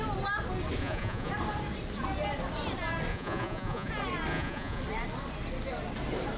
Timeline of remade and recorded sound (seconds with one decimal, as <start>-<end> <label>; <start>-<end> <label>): 0.0-0.8 recorded; 0.8-1.3 remade; 1.3-3.1 recorded; 3.1-3.9 remade; 3.9-4.3 recorded; 4.3-4.8 remade; 4.8-6.4 recorded

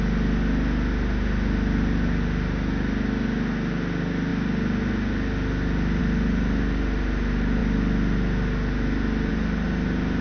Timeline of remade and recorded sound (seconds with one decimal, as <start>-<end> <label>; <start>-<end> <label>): 0.0-10.2 recorded